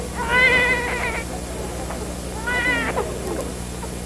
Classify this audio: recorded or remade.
recorded